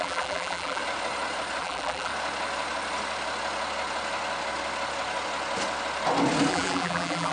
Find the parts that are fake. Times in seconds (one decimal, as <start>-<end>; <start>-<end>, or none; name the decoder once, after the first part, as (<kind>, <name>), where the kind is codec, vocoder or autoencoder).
0.0-0.8 (vocoder, BigVGAN v2); 1.6-2.1; 6.5-7.3